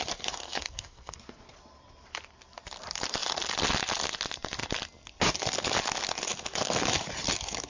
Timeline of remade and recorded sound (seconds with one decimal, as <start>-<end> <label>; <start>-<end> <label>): 0.0-0.4 recorded; 0.4-1.2 remade; 1.2-7.7 recorded